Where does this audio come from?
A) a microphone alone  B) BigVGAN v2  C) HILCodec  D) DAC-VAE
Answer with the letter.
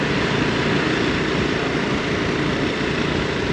A